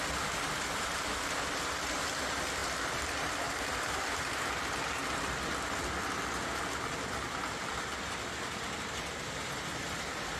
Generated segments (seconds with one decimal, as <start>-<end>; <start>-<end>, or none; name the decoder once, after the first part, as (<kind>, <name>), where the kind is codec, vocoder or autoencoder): none